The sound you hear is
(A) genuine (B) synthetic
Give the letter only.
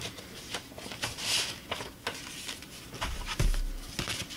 A